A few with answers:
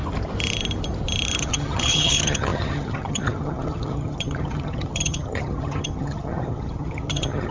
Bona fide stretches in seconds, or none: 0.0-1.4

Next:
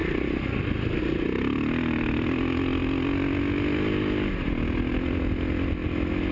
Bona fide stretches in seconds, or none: 0.0-6.3

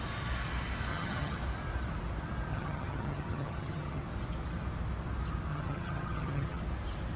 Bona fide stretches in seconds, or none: 0.0-0.9; 1.4-2.5; 4.0-5.5; 6.6-7.2

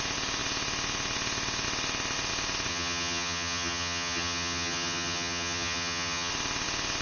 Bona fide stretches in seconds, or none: 0.0-2.7; 6.3-7.0

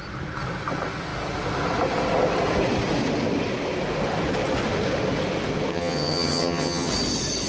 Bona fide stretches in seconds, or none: 0.0-5.7; 6.9-7.5

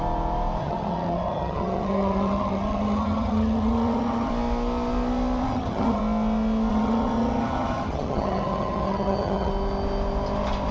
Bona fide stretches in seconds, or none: 0.0-0.6; 4.3-5.4; 6.0-6.7; 9.5-10.7

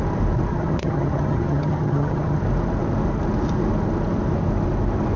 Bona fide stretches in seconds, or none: 0.0-0.5; 2.4-5.2